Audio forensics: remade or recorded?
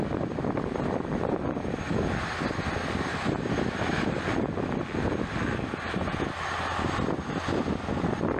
recorded